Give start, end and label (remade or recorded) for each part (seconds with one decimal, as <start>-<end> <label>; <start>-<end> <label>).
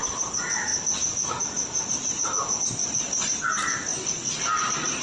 0.0-5.0 recorded